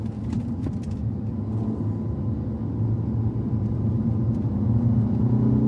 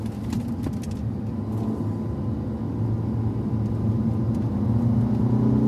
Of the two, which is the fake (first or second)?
first